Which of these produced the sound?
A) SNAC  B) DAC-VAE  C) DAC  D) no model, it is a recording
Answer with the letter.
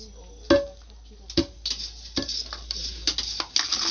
D